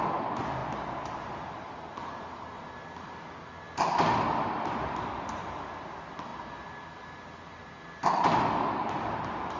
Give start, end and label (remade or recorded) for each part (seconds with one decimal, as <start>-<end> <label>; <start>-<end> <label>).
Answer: 0.0-9.6 recorded